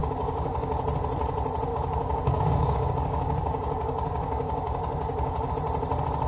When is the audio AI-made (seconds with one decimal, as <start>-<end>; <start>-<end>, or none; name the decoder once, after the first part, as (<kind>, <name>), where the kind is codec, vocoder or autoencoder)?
0.0-0.7 (codec, DAC); 1.7-5.5